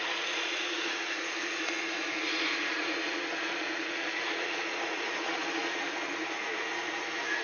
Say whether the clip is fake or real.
fake